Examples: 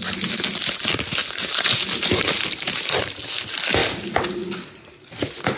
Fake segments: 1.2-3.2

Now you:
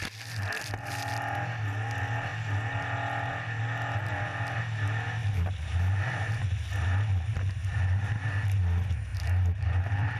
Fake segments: 5.2-6.4; 7.6-8.6; 9.1-10.2

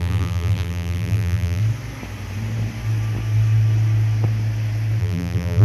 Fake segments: 0.0-1.6; 5.0-5.6

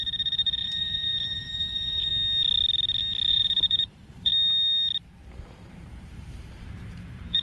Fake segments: 0.0-2.1; 3.3-4.3; 5.7-7.4